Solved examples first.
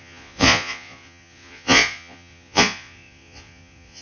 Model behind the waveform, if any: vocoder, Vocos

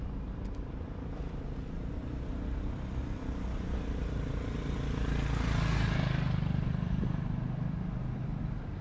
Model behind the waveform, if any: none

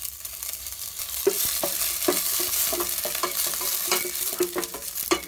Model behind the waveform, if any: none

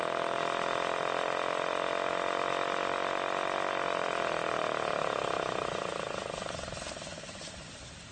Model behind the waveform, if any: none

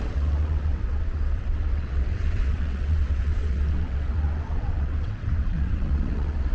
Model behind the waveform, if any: vocoder, WaveNeXt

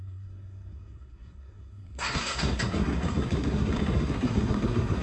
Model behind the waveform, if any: codec, SNAC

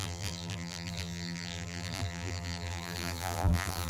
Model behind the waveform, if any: vocoder, BigVGAN v2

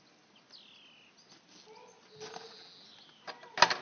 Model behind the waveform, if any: none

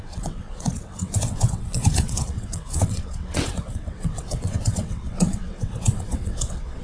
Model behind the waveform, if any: vocoder, WaveNeXt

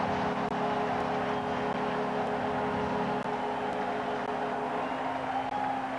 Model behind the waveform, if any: none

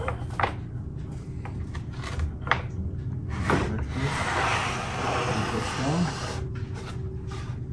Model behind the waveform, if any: none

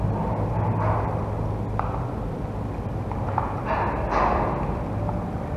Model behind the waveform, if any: none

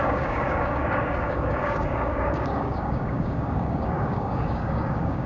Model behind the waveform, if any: codec, DAC